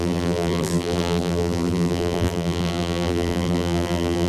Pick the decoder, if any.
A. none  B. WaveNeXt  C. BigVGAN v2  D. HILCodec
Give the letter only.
C